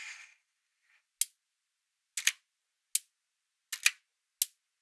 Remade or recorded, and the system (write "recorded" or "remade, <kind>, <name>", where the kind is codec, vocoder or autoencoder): recorded